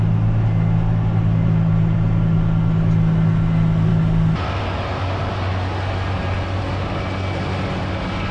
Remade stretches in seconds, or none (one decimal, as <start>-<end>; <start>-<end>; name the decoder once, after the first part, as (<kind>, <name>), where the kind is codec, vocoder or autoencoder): none